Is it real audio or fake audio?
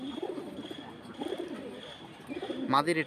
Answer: real